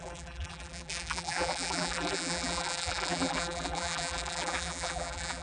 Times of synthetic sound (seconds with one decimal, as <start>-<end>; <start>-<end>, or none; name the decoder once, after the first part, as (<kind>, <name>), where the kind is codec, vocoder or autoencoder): 0.0-5.4 (vocoder, BigVGAN v2)